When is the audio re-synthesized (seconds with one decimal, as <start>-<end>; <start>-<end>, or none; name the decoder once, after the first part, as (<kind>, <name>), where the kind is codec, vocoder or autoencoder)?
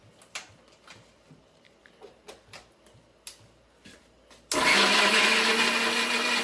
4.7-5.5 (autoencoder, DAC-VAE)